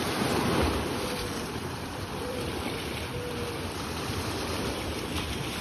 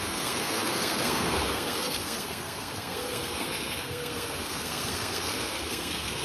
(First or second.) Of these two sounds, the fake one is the second